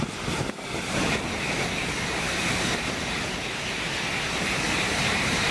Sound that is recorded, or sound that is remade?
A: recorded